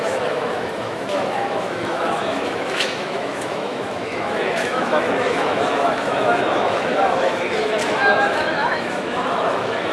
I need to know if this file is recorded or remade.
remade